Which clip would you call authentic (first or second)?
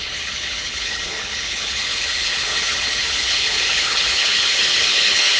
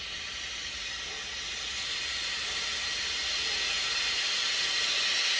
second